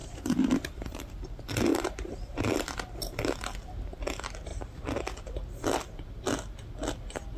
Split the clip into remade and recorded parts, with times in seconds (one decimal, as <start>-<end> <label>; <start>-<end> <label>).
0.0-1.2 remade; 1.2-1.7 recorded; 1.7-2.5 remade; 2.5-7.4 recorded